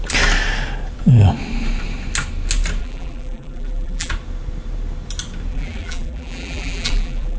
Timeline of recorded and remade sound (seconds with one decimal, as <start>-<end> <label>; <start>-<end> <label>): 0.0-2.8 recorded; 2.8-4.1 remade; 4.1-5.5 recorded; 5.5-7.4 remade